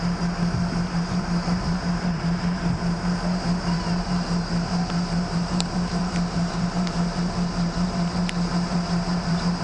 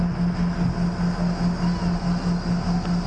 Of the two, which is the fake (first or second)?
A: first